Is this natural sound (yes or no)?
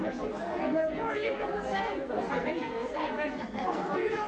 no